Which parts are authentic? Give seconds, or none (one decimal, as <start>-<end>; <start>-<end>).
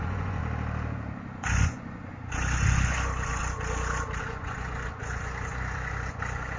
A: 0.4-1.4; 3.4-4.2